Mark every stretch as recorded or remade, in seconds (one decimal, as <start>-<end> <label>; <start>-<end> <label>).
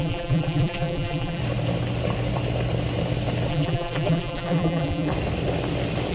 0.0-1.4 remade; 1.4-3.5 recorded; 3.5-5.1 remade; 5.1-6.1 recorded